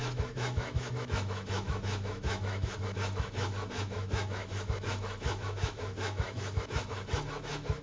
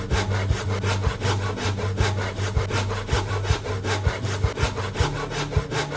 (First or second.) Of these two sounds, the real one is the second